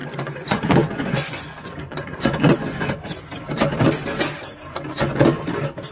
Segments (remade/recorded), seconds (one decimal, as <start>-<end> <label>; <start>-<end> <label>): 0.0-3.3 remade; 3.3-4.9 recorded; 4.9-5.4 remade; 5.4-5.9 recorded